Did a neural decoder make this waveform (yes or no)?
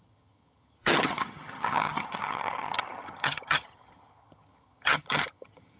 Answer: yes